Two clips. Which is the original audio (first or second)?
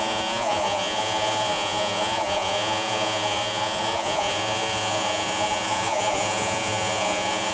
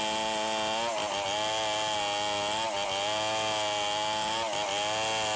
second